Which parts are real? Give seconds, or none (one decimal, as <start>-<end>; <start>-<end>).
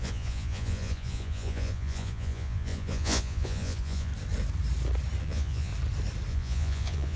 4.1-5.2; 5.7-6.3